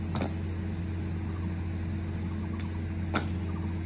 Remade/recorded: recorded